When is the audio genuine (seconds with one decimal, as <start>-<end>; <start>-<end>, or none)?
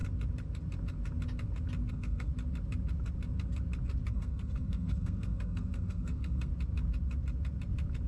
0.0-1.9; 2.3-4.1; 6.5-8.1